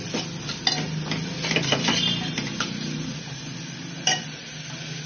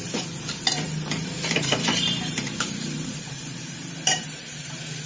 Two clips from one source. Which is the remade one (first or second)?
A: second